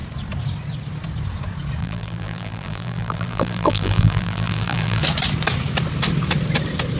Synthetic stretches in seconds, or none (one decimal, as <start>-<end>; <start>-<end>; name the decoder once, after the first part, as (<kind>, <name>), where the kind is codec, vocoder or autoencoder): 1.8-5.0 (vocoder, BigVGAN v2)